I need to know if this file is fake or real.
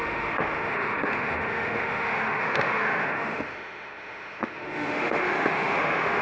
fake